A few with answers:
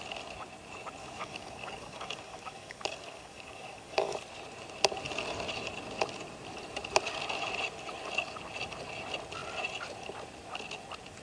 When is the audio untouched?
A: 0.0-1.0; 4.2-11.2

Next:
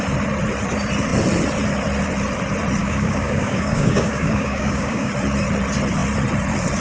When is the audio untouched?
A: 0.0-2.8; 5.1-6.8

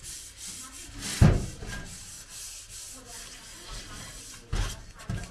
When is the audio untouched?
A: 0.0-5.3